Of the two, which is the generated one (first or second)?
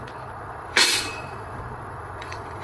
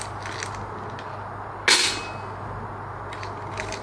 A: first